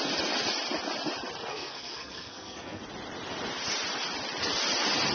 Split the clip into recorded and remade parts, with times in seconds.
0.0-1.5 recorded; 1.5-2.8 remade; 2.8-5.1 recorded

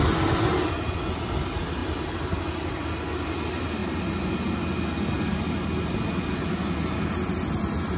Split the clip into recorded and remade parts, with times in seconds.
0.0-8.0 recorded

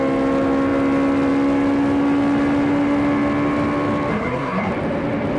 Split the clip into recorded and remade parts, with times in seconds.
0.0-4.1 recorded; 4.1-4.7 remade; 4.7-5.4 recorded